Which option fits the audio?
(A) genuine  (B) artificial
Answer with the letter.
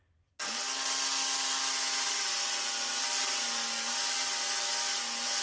A